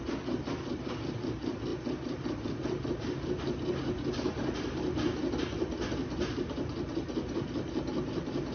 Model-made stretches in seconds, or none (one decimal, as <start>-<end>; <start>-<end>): none